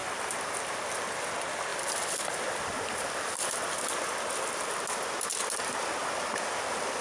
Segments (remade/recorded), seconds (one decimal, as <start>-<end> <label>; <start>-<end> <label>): 0.0-0.6 remade; 0.6-1.7 recorded; 1.7-4.7 remade; 4.7-7.0 recorded